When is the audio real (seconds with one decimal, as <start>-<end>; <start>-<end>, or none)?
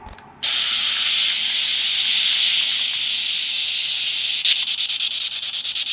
0.0-5.9